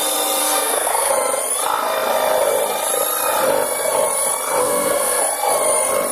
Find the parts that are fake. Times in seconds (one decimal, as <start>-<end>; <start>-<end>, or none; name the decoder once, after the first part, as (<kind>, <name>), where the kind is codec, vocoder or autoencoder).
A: 0.4-1.1 (codec, SNAC); 4.6-5.2

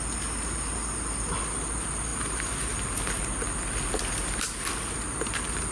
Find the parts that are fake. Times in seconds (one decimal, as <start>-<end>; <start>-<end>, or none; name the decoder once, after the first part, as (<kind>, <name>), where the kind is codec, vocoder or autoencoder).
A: none

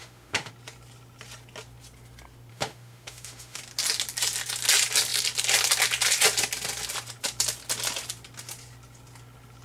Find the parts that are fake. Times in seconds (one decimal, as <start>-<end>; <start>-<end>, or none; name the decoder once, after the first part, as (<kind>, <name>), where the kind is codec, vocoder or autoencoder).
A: 0.0-0.5 (autoencoder, DAC-VAE); 2.5-3.6

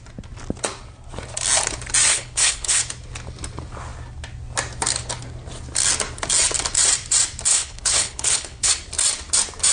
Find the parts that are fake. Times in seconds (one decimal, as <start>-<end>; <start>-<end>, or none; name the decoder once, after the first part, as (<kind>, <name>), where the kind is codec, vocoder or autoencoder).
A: 2.1-2.8 (codec, HILCodec); 7.5-8.7

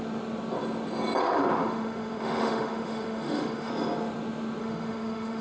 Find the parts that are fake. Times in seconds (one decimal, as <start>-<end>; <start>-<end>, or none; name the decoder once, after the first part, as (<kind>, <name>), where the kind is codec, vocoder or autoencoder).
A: 1.2-3.7 (autoencoder, DAC-VAE); 4.6-5.4

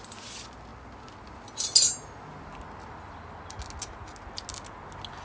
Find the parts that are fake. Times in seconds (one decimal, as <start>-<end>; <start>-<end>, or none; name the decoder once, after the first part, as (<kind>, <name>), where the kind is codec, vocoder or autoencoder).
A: none